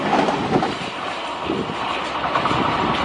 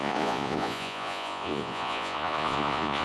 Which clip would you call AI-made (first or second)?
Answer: second